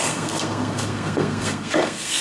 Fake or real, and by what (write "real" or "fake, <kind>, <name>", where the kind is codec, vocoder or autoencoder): fake, codec, SNAC